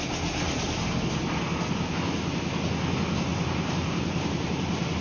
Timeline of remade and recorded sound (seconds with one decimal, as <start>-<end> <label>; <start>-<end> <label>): 0.0-3.3 recorded; 3.3-5.0 remade